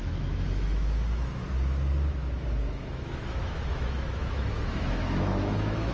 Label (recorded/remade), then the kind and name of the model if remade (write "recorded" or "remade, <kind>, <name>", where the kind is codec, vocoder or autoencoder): remade, autoencoder, DAC-VAE